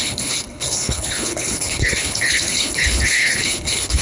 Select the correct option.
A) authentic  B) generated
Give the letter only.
B